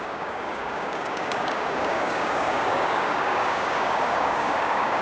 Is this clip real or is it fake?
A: fake